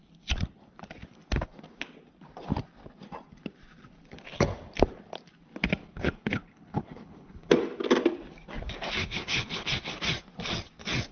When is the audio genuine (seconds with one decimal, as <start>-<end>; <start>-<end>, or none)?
0.0-5.8; 7.5-9.0; 9.7-11.1